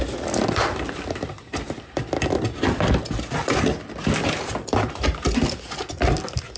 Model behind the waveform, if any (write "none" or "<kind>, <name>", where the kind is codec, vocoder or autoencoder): none